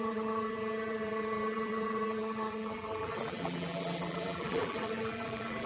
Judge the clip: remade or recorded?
remade